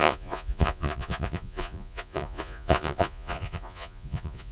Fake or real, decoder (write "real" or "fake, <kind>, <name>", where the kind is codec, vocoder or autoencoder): fake, vocoder, Vocos